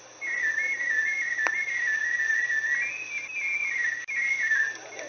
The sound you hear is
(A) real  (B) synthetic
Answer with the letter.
A